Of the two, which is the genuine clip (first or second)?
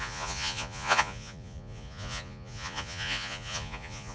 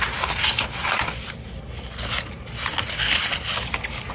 second